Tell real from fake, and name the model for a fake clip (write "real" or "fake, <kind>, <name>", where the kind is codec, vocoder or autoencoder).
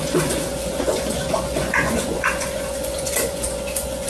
fake, vocoder, Vocos